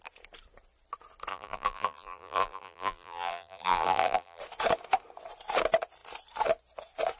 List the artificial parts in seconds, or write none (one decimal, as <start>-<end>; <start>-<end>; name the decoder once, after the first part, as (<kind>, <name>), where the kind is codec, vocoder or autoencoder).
1.3-4.4 (vocoder, BigVGAN v2)